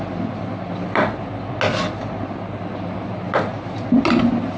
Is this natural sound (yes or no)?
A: yes